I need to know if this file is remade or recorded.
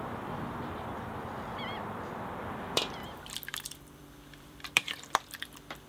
remade